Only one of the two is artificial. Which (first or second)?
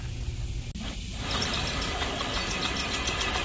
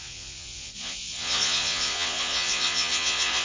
second